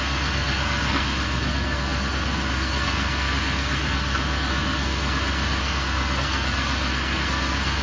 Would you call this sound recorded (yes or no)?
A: no